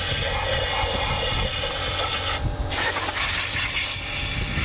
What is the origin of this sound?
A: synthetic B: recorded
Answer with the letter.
B